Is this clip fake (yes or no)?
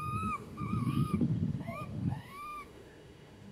yes